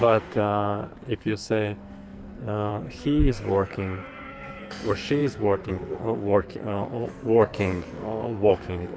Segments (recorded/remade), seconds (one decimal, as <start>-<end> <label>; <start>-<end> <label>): 0.0-9.0 remade